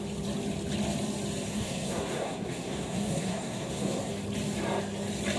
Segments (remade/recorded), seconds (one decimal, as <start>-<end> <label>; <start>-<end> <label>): 0.0-1.5 recorded; 1.5-4.1 remade; 4.1-5.4 recorded